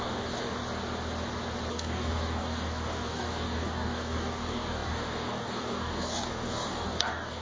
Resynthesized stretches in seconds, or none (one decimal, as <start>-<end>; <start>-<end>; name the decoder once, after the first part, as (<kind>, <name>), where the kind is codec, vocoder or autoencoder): 0.0-0.6 (codec, DAC); 1.7-7.4